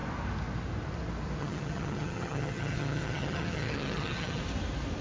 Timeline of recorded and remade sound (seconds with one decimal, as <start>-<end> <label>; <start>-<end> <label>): 0.0-1.4 recorded; 1.4-4.4 remade; 4.4-5.0 recorded